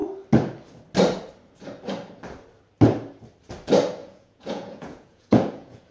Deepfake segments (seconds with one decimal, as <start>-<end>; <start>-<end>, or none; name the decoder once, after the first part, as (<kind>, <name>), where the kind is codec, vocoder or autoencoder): 4.0-5.9 (vocoder, Vocos)

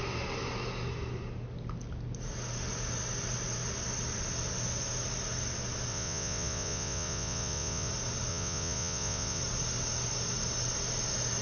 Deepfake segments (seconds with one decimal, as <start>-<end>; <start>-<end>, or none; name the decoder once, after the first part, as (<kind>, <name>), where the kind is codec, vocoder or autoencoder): 5.9-7.9 (vocoder, Vocos); 8.3-9.4